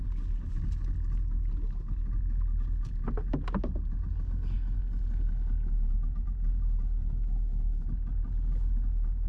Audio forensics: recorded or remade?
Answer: recorded